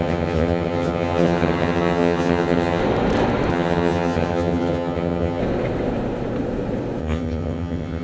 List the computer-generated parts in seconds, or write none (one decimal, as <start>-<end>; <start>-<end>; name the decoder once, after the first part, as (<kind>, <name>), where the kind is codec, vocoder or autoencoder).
0.0-2.8 (vocoder, HiFi-GAN); 3.5-5.4; 7.0-8.0